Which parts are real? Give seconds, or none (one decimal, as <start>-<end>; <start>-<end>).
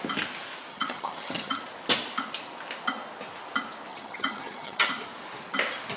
0.0-0.7; 1.6-3.9; 4.9-6.0